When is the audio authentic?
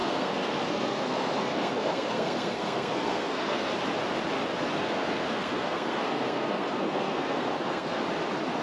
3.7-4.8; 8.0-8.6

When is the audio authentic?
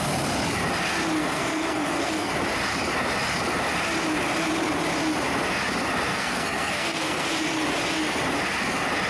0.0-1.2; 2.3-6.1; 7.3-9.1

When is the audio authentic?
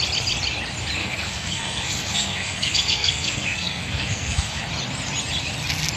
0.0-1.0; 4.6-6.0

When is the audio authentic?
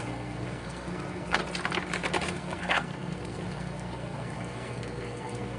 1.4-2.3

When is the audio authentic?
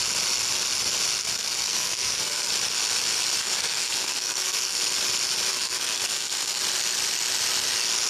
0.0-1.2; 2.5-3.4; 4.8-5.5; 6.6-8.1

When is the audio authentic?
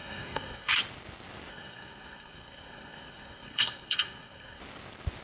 0.7-1.5; 4.6-5.2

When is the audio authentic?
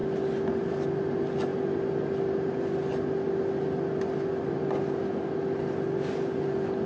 0.0-6.9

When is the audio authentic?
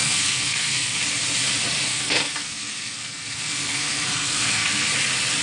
1.0-1.9; 4.9-5.4